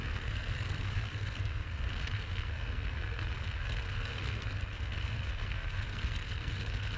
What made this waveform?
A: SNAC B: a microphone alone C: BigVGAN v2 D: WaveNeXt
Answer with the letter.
A